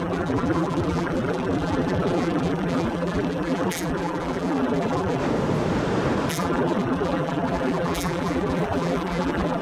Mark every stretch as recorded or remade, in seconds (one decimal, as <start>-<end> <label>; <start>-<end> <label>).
0.0-5.2 remade; 5.2-6.3 recorded; 6.3-9.6 remade